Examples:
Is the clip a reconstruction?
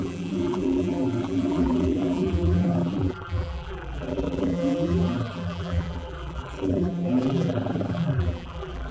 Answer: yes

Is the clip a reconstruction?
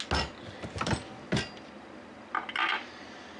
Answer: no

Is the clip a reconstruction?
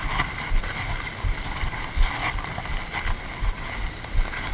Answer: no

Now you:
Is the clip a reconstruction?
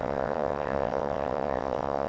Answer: yes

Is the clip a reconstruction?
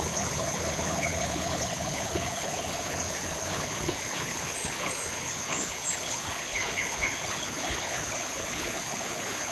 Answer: yes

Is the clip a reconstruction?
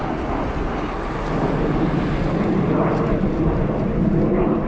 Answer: no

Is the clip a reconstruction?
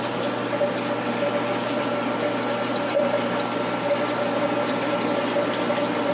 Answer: no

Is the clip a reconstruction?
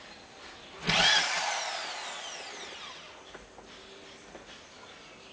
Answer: no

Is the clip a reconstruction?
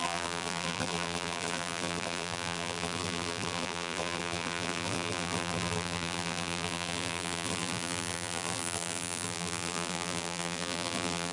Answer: yes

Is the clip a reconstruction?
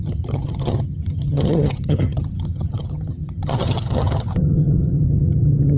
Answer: yes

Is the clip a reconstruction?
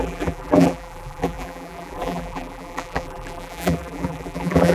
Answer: yes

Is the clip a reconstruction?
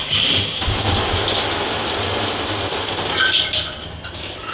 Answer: no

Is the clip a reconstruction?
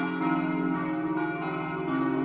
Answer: no